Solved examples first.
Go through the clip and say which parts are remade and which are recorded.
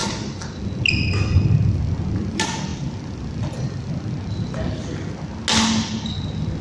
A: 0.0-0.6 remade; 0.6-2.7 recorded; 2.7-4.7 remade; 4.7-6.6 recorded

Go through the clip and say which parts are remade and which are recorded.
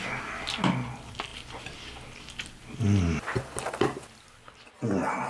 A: 0.0-5.3 recorded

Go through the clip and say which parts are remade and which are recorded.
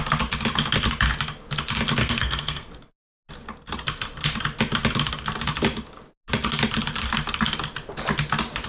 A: 0.0-2.0 recorded; 2.0-2.7 remade; 2.7-8.7 recorded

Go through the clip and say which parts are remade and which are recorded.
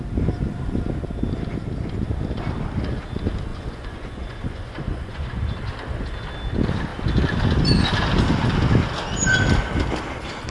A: 0.0-3.5 recorded; 3.5-5.4 remade; 5.4-10.5 recorded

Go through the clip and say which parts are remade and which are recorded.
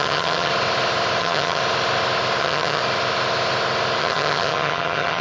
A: 0.0-0.5 remade; 0.5-1.2 recorded; 1.2-1.6 remade; 1.6-2.4 recorded; 2.4-2.8 remade; 2.8-4.0 recorded; 4.0-5.2 remade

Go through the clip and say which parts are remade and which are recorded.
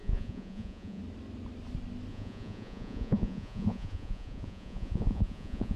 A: 0.0-1.0 remade; 1.0-2.1 recorded; 2.1-5.8 remade